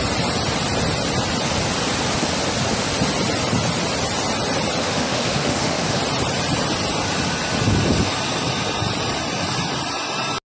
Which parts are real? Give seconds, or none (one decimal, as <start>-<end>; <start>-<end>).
0.0-4.8; 6.0-10.5